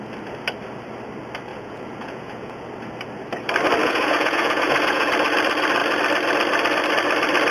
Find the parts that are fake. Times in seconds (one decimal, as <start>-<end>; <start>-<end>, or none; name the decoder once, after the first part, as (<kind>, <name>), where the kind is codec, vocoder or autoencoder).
1.5-2.6 (vocoder, Vocos); 3.8-5.1